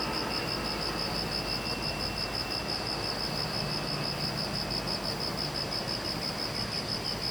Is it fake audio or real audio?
real